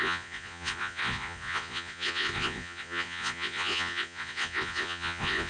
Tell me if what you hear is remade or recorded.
remade